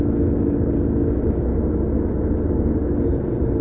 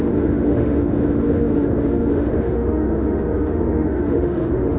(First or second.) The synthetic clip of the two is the second